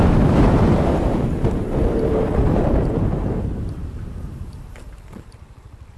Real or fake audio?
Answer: fake